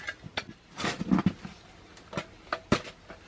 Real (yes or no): yes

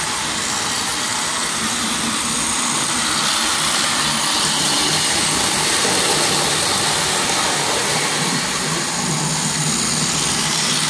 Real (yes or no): yes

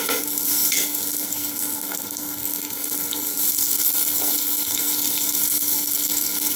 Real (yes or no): no